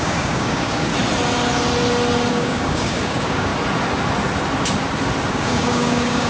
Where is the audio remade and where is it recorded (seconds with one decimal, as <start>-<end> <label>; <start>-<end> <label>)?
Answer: 0.0-0.9 remade; 0.9-2.3 recorded; 2.3-3.5 remade; 3.5-5.3 recorded; 5.3-6.3 remade